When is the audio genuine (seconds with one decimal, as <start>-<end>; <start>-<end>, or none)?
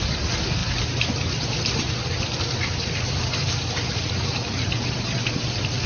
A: 0.0-0.6; 4.1-5.9